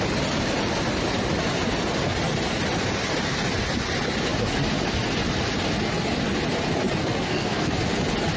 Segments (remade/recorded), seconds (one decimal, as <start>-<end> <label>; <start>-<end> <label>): 0.0-7.0 recorded; 7.0-7.7 remade; 7.7-8.4 recorded